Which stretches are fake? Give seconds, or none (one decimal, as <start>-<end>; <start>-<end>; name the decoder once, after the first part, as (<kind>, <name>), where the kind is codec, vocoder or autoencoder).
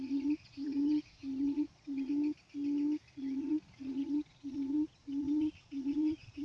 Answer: 0.0-2.1 (vocoder, Vocos); 3.1-6.4